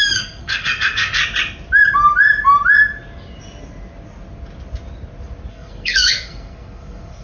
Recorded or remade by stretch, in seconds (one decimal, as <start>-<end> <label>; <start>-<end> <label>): 0.0-1.2 remade; 1.2-5.5 recorded; 5.5-7.2 remade